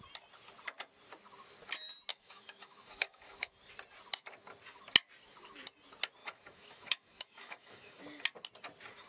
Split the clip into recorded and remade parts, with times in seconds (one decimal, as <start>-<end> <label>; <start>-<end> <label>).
0.0-2.1 recorded; 2.1-3.6 remade; 3.6-6.2 recorded; 6.2-8.0 remade; 8.0-9.1 recorded